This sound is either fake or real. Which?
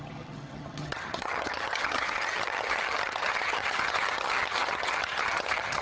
fake